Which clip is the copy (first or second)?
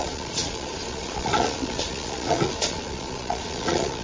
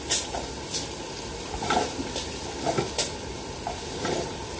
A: first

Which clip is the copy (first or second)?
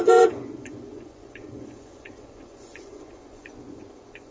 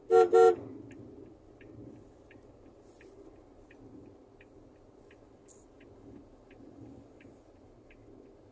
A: first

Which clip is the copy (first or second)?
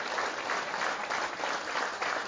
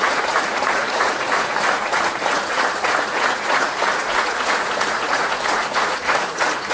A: second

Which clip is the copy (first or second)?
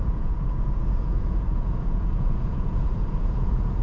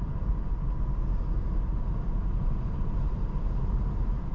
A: first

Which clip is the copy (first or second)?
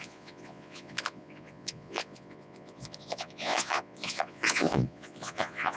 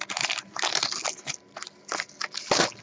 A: first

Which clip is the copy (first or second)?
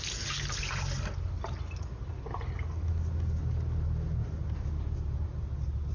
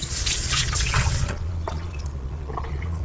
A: second